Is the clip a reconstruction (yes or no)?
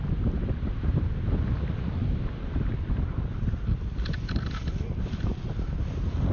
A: no